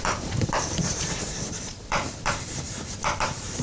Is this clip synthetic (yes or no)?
yes